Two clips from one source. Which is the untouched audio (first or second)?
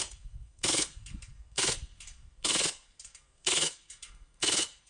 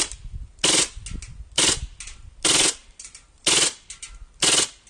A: second